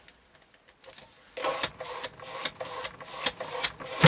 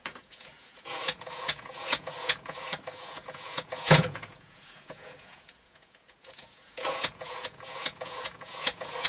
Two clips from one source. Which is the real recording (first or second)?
first